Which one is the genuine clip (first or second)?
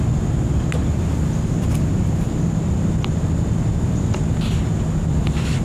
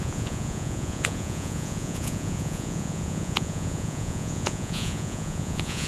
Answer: first